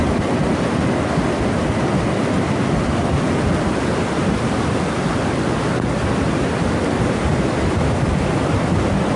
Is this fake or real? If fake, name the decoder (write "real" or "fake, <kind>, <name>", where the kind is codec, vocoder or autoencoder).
real